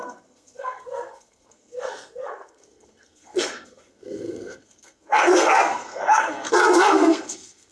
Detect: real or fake fake